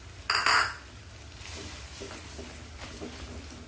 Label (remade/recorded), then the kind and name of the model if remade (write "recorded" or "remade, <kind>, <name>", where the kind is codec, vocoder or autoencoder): recorded